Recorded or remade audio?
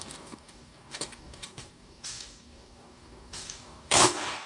remade